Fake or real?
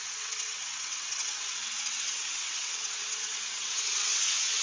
fake